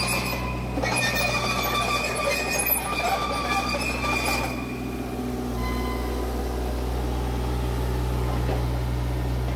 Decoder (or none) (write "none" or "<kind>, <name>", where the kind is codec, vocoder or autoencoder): none